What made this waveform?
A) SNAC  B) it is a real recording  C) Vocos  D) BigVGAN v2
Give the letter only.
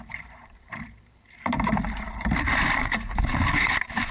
D